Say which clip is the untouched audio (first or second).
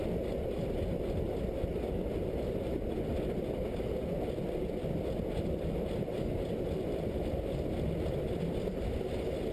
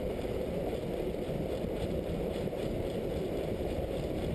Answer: first